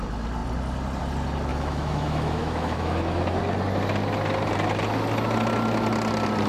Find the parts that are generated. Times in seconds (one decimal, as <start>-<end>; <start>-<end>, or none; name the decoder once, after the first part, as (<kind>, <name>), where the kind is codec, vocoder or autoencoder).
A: 1.5-3.4 (autoencoder, DAC-VAE)